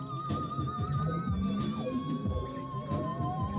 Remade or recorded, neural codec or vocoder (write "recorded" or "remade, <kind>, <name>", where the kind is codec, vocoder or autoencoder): recorded